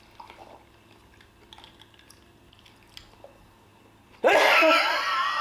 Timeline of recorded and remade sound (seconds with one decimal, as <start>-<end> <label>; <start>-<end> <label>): 0.0-3.7 recorded; 3.7-4.8 remade; 4.8-5.4 recorded

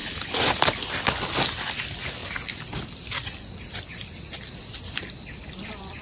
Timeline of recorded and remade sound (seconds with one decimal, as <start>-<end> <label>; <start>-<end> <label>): 0.0-0.7 remade; 0.7-6.0 recorded

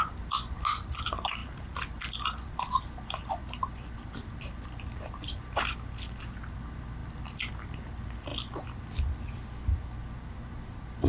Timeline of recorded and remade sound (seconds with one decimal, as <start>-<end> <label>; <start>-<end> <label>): 0.0-1.4 recorded; 1.4-5.4 remade; 5.4-7.0 recorded; 7.0-7.5 remade; 7.5-11.1 recorded

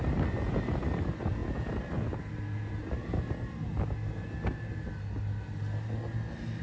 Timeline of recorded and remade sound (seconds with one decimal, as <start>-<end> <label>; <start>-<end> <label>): 0.0-6.6 recorded

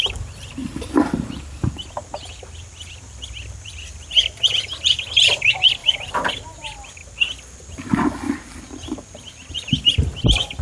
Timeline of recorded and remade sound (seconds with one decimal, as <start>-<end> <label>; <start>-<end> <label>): 0.0-7.0 remade; 7.0-7.6 recorded; 7.6-10.6 remade